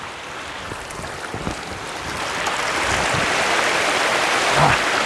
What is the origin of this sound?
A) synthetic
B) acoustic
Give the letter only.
B